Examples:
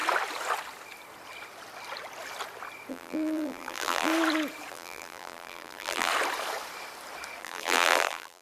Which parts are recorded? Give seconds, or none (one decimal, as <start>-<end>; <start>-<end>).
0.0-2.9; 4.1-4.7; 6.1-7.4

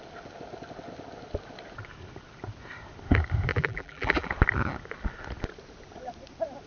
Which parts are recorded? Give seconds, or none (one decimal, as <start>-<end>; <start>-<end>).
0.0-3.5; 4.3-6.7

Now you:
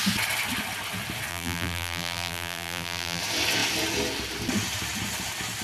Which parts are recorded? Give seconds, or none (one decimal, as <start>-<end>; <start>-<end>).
0.0-1.3; 3.2-5.6

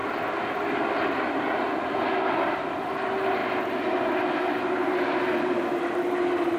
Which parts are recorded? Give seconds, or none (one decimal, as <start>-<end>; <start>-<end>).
0.0-6.6